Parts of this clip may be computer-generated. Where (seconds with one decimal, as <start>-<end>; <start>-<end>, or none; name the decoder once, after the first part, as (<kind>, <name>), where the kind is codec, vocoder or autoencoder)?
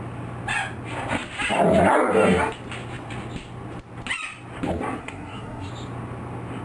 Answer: 5.0-5.7 (codec, SNAC)